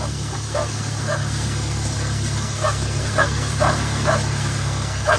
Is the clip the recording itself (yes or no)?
no